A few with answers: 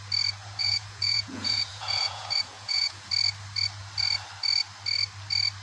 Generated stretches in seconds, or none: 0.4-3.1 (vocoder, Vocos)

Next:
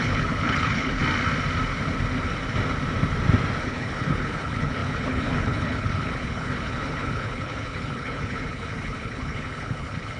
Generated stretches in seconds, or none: 0.0-1.0 (codec, HILCodec); 3.6-10.2

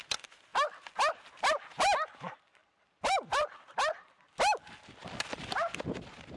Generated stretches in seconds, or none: 2.6-4.3 (vocoder, BigVGAN v2)

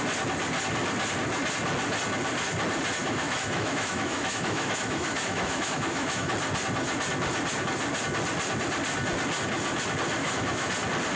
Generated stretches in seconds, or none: 3.0-6.3 (autoencoder, DAC-VAE); 10.2-10.7

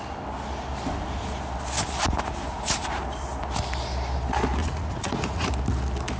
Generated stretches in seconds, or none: 4.6-5.5 (vocoder, Vocos)